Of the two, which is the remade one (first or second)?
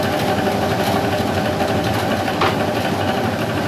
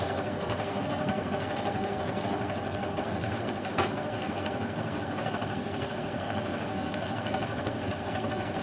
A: second